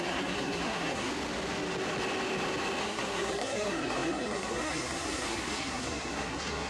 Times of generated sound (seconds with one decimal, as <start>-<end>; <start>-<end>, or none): 0.0-1.1; 2.8-6.7